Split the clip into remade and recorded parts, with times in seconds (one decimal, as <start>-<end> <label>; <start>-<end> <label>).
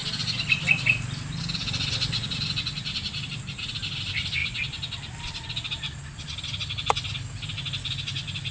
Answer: 0.0-8.5 recorded